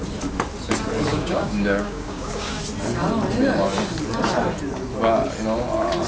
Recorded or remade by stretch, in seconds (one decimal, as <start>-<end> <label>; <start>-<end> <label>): 0.0-1.1 recorded; 1.1-2.6 remade; 2.6-6.1 recorded